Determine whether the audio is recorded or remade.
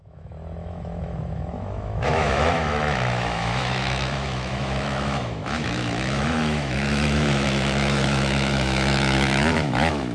remade